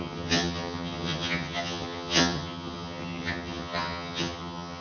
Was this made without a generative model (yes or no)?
no